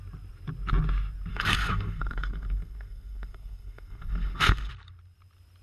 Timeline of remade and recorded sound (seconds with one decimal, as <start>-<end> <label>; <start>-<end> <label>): 0.0-1.3 recorded; 1.3-4.7 remade; 4.7-5.6 recorded